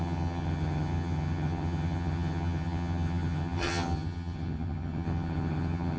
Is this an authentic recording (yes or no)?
no